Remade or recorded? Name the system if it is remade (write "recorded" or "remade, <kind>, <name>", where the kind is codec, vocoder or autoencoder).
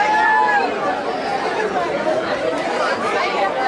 recorded